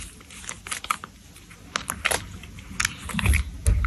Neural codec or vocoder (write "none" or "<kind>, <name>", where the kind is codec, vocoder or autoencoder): none